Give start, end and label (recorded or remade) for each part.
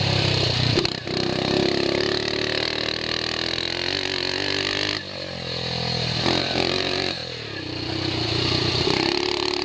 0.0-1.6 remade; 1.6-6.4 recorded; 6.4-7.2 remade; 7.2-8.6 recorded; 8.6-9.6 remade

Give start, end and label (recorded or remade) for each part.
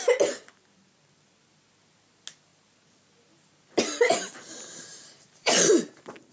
0.0-4.9 recorded; 4.9-5.5 remade; 5.5-6.3 recorded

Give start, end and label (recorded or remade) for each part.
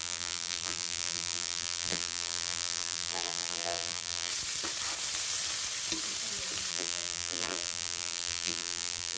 0.0-4.3 remade; 4.3-6.7 recorded; 6.7-9.2 remade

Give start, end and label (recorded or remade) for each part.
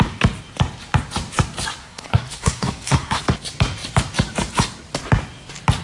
0.0-1.8 recorded; 1.8-3.2 remade; 3.2-5.8 recorded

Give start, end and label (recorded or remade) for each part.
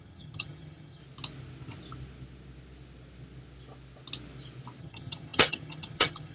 0.0-1.0 remade; 1.0-4.8 recorded; 4.8-6.3 remade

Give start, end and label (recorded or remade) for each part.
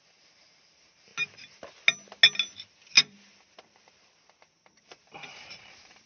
0.0-1.1 remade; 1.1-4.8 recorded; 4.8-6.1 remade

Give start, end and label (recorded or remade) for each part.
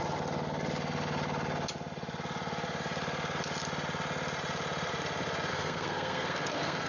0.0-5.5 recorded; 5.5-6.9 remade